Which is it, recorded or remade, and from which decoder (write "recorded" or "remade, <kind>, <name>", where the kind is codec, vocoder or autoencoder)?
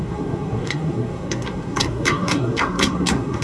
remade, codec, SNAC